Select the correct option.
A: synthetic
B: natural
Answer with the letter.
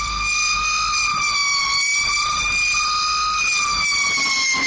A